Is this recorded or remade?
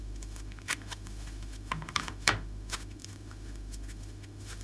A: remade